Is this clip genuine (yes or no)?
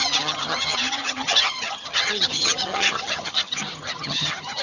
no